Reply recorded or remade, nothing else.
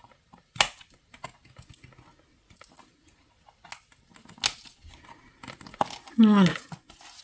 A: recorded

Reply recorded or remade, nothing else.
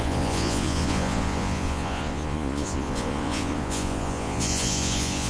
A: remade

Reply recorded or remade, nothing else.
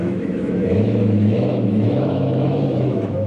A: remade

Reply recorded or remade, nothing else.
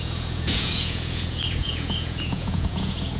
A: remade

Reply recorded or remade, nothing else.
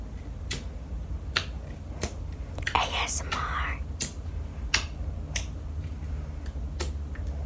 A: recorded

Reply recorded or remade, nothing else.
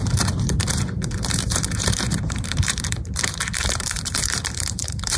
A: remade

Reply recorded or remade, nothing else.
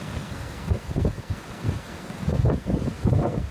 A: remade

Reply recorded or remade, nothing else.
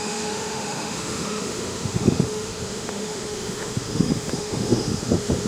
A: remade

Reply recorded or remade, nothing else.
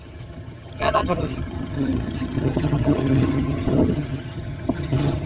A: remade